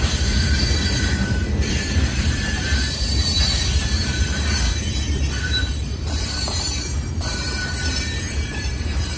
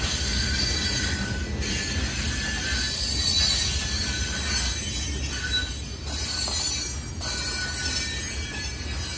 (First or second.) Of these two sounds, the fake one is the first